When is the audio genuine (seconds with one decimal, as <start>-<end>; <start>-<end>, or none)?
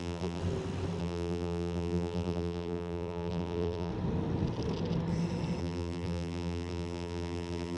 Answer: 0.4-1.0; 3.9-5.6